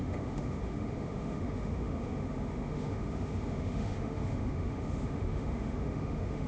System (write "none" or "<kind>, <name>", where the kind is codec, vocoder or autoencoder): autoencoder, DAC-VAE